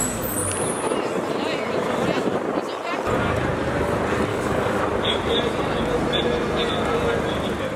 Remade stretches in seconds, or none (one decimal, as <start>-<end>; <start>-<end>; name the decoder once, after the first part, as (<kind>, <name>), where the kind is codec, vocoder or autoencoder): 4.3-4.8 (codec, DAC)